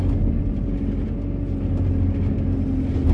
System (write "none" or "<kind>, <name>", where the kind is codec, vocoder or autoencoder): none